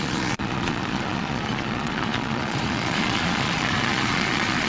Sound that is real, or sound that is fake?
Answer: fake